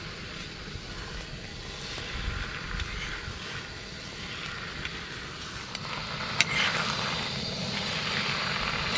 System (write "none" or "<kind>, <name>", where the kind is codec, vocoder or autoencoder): none